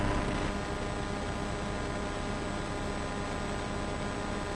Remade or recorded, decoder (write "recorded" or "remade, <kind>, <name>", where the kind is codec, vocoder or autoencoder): recorded